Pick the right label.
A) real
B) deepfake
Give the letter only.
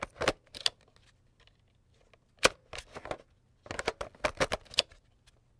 A